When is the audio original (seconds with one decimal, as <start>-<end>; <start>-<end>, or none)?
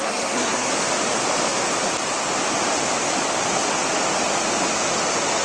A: 0.7-5.4